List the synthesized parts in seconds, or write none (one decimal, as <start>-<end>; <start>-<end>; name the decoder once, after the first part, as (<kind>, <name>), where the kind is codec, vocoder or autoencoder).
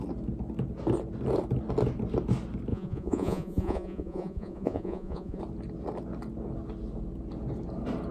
2.7-5.4 (vocoder, Vocos)